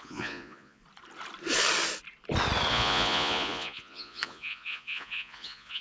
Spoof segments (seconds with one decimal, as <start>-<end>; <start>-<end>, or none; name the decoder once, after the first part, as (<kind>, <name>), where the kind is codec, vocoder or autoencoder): 0.0-0.8 (vocoder, Vocos); 2.7-5.8